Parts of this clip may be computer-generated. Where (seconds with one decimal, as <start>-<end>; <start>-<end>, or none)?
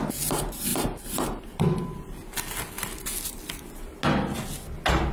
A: 0.7-3.8